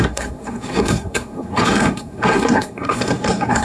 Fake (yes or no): yes